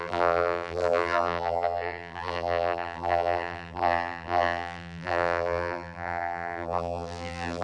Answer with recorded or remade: remade